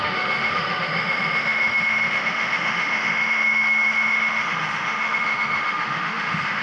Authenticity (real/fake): fake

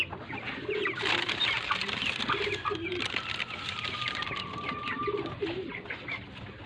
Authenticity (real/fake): real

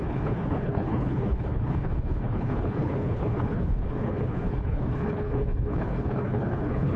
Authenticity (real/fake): fake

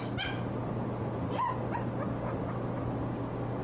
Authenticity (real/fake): real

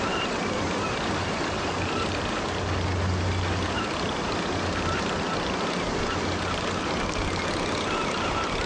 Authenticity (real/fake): real